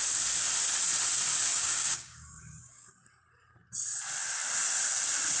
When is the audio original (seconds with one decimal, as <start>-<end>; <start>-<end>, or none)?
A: 0.0-1.5; 2.9-5.4